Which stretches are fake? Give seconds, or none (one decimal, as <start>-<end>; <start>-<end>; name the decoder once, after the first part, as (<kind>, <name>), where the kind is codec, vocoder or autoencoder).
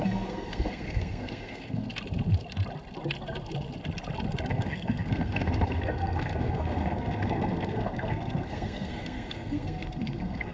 0.0-1.9 (codec, SNAC); 4.5-10.5